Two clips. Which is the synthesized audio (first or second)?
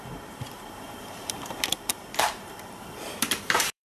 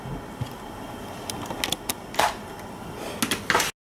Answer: first